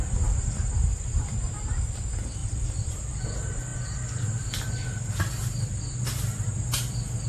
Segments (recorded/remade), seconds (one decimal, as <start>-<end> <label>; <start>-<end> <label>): 0.0-0.9 recorded; 0.9-1.7 remade; 1.7-2.4 recorded; 2.4-3.0 remade; 3.0-7.3 recorded